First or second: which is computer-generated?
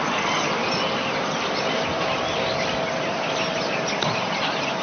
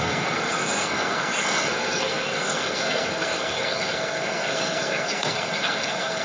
second